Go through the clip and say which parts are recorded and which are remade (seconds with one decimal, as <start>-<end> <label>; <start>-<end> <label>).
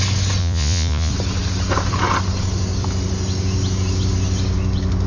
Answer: 0.0-0.4 recorded; 0.4-1.1 remade; 1.1-5.1 recorded